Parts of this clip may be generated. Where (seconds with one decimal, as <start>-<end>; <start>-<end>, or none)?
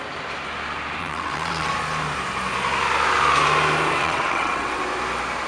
1.0-1.7; 4.0-4.8